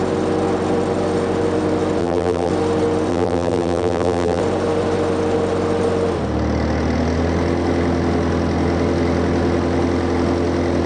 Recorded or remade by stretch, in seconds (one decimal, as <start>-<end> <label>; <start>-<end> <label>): 0.0-2.0 recorded; 2.0-2.5 remade; 2.5-3.1 recorded; 3.1-4.4 remade; 4.4-10.9 recorded